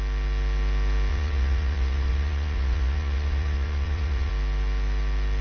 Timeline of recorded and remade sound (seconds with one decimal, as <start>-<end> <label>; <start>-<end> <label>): 0.0-1.1 recorded; 1.1-4.3 remade; 4.3-5.4 recorded